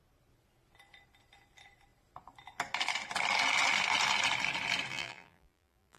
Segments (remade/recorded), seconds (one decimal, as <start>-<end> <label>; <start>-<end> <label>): 0.0-4.9 recorded; 4.9-6.0 remade